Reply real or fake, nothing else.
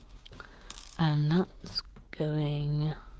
fake